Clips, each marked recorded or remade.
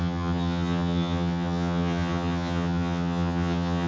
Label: remade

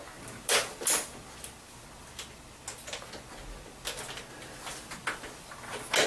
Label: recorded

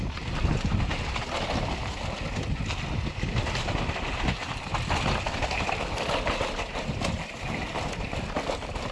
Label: recorded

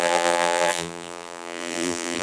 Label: remade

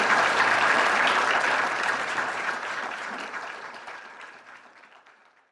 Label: remade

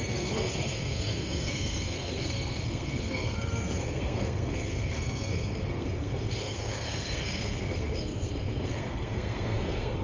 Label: remade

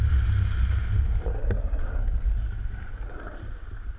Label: recorded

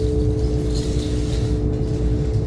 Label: recorded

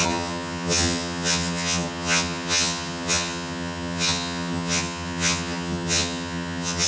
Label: remade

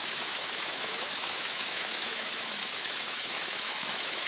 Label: remade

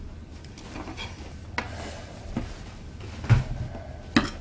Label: recorded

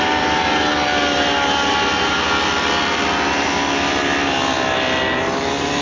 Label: remade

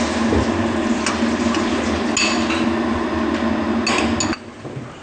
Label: recorded